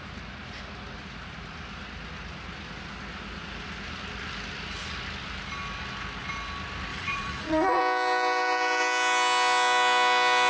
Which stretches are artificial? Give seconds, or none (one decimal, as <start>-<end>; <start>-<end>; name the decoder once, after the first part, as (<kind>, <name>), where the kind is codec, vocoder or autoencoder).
6.9-7.8 (vocoder, Vocos)